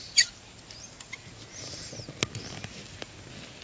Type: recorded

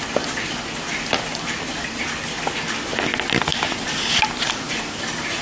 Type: recorded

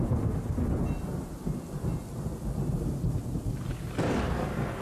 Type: recorded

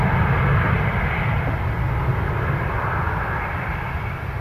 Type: recorded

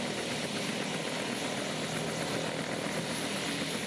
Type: recorded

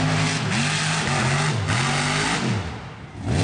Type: recorded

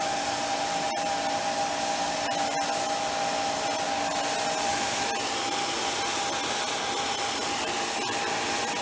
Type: recorded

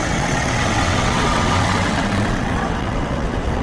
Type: remade